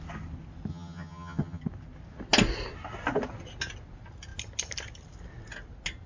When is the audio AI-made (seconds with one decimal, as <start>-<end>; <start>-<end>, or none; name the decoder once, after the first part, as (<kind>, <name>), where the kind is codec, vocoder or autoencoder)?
0.7-1.6 (vocoder, HiFi-GAN)